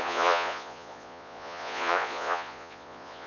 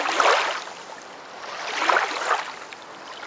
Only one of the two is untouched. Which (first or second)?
second